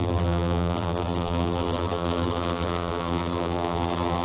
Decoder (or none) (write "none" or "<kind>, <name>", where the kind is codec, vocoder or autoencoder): vocoder, BigVGAN v2